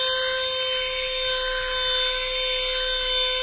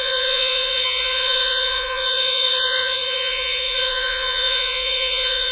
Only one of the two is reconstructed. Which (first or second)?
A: second